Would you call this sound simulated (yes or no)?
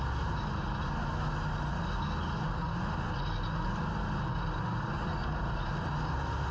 no